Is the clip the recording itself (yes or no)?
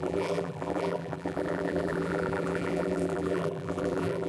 no